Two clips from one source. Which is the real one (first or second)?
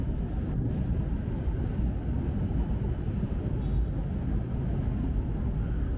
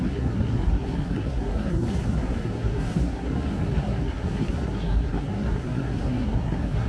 first